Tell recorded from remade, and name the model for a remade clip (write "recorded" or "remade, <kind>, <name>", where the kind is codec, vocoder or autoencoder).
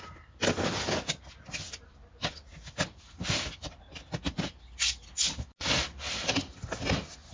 recorded